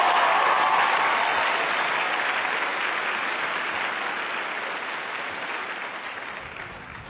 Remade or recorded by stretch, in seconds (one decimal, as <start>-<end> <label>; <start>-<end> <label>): 0.0-7.1 recorded